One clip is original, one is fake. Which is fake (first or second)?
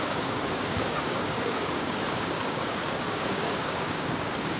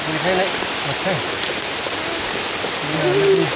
first